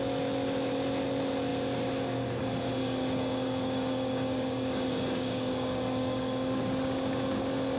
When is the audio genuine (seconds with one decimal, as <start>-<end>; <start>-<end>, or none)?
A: 0.0-2.8; 6.8-7.8